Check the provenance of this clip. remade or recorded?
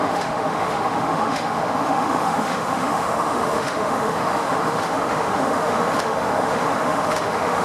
remade